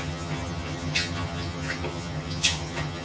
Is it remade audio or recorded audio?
remade